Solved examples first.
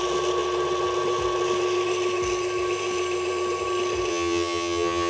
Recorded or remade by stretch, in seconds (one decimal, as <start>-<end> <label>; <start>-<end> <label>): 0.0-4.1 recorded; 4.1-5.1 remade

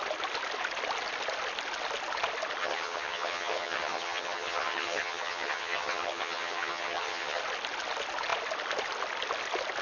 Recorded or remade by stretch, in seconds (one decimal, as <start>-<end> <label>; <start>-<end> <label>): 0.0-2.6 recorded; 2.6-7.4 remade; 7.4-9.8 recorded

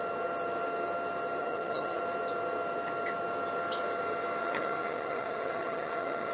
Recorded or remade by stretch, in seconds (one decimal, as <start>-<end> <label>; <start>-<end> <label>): 0.0-1.4 recorded; 1.4-2.0 remade; 2.0-4.4 recorded; 4.4-6.3 remade